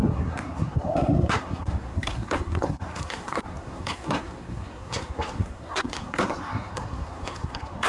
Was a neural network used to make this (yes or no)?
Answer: yes